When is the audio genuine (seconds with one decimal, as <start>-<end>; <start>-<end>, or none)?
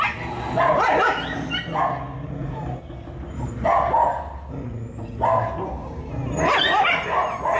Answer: 0.0-7.6